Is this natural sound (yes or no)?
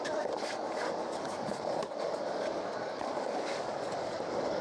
no